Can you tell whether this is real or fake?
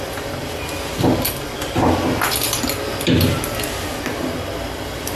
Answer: real